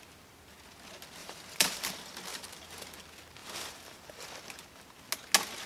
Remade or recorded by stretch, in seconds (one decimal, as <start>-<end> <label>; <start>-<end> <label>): 0.0-1.2 recorded; 1.2-1.9 remade; 1.9-2.3 recorded; 2.3-2.9 remade; 2.9-3.4 recorded; 3.4-4.3 remade; 4.3-5.7 recorded